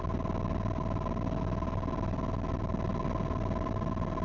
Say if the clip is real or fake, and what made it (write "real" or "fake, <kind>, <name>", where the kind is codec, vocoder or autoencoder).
real